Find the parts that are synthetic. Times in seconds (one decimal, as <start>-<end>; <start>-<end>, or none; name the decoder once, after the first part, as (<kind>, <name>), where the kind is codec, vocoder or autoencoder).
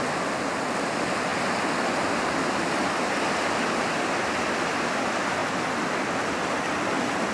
none